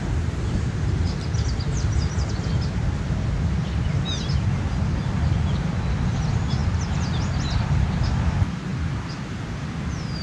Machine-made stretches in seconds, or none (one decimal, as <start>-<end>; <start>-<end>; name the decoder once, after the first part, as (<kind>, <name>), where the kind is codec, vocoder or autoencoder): none